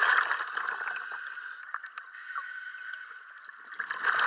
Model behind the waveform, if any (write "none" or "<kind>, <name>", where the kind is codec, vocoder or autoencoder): none